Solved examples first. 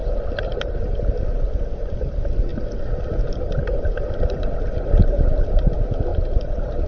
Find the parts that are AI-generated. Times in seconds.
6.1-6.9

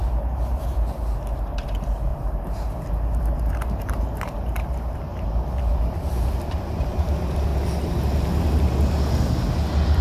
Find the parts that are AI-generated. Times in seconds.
0.0-7.5

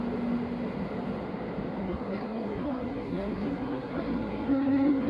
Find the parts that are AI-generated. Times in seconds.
1.8-5.1

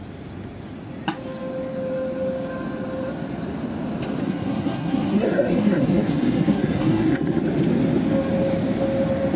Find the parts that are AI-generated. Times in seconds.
4.2-7.4

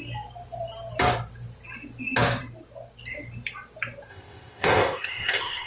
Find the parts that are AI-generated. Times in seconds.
4.1-5.7

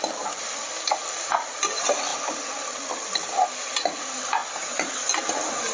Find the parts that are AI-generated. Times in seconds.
none